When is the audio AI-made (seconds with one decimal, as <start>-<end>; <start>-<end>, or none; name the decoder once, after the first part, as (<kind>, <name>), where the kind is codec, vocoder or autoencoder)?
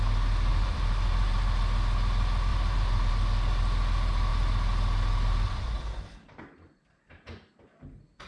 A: 0.5-1.4 (vocoder, BigVGAN v2); 2.5-3.1